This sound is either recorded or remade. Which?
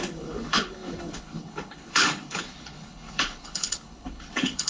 remade